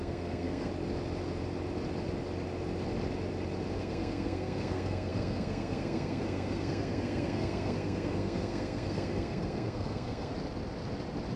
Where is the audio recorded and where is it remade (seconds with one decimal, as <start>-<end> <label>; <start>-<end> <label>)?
0.0-0.7 remade; 0.7-3.8 recorded; 3.8-10.3 remade; 10.3-11.4 recorded